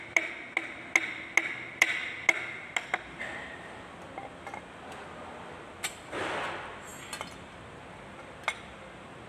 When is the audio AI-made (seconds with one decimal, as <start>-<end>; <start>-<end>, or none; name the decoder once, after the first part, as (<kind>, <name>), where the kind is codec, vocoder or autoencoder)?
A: none